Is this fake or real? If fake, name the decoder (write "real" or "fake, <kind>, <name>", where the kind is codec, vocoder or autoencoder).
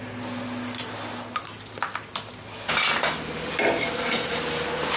real